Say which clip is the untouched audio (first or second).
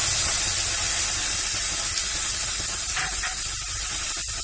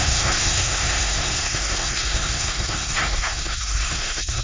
first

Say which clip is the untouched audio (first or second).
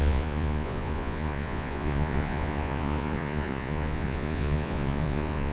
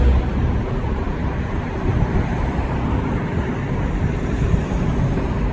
second